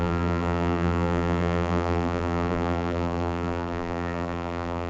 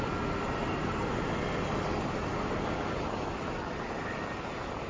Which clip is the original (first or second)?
second